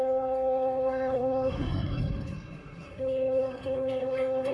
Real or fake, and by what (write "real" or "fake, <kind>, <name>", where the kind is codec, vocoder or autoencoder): fake, codec, SNAC